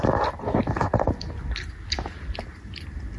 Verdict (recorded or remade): recorded